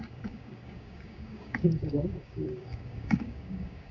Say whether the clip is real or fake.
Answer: fake